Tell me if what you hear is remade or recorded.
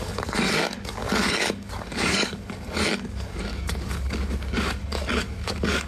remade